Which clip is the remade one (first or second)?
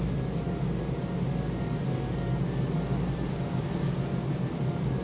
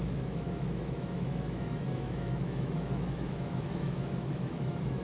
second